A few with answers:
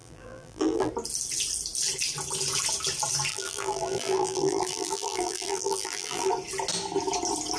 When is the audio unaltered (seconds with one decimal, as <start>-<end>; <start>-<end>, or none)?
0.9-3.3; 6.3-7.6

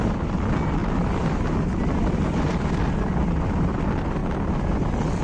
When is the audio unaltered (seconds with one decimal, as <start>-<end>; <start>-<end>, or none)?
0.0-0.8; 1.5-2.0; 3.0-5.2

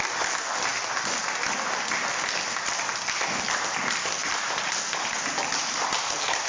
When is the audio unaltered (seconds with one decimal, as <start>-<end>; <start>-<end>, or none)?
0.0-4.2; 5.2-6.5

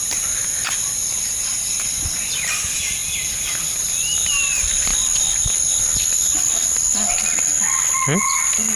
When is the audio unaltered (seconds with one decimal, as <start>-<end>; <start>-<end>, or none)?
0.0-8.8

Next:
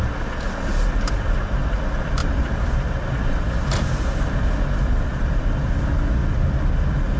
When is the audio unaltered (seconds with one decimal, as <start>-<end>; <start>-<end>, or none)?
0.0-2.2; 4.3-5.1; 5.7-6.2

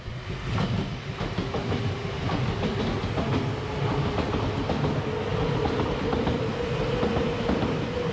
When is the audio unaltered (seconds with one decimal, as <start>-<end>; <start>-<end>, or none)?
0.0-5.3; 6.1-8.1

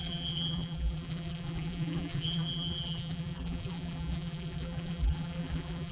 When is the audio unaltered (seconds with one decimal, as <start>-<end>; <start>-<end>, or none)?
none